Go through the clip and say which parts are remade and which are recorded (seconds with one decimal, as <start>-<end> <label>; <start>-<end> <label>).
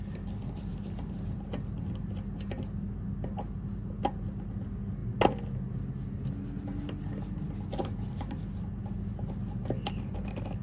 0.0-10.6 recorded